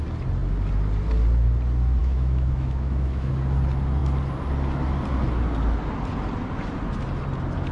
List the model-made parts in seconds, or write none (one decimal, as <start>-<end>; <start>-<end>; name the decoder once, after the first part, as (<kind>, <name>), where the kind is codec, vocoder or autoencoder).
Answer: 2.0-3.3 (autoencoder, DAC-VAE)